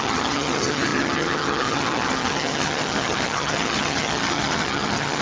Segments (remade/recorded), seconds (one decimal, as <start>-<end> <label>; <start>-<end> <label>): 0.0-5.2 remade

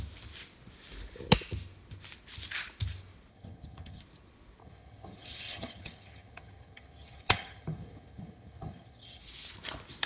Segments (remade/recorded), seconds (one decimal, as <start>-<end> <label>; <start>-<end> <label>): 0.0-3.3 recorded; 3.3-4.0 remade; 4.0-4.6 recorded; 4.6-9.2 remade; 9.2-10.1 recorded

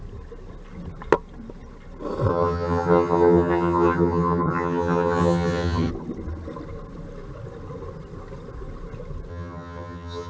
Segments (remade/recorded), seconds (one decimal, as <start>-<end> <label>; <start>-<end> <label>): 0.0-2.3 recorded; 2.3-5.9 remade; 5.9-9.3 recorded; 9.3-10.3 remade

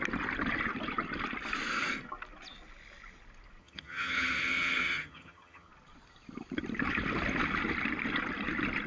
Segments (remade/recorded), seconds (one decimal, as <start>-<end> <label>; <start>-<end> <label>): 0.0-3.6 recorded; 3.6-5.7 remade; 5.7-8.9 recorded

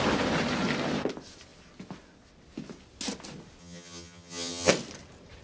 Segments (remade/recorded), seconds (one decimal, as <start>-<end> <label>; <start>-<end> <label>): 0.0-3.6 recorded; 3.6-4.7 remade; 4.7-5.4 recorded

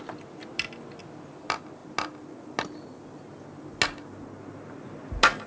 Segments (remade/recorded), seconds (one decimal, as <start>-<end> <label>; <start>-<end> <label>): 0.0-5.5 recorded

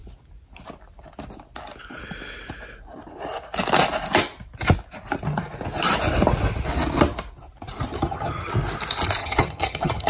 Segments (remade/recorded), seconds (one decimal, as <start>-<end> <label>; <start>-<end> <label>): 0.0-7.9 recorded; 7.9-8.5 remade; 8.5-9.2 recorded; 9.2-10.1 remade